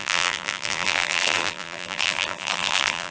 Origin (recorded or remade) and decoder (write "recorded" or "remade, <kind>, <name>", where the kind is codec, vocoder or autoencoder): remade, vocoder, BigVGAN v2